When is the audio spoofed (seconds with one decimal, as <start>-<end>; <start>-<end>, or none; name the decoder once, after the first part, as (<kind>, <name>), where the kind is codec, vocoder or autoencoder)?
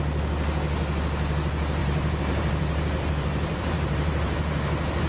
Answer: 1.8-5.1 (vocoder, BigVGAN v2)